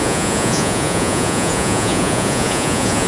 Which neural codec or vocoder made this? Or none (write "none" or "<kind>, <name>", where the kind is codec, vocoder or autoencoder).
vocoder, Vocos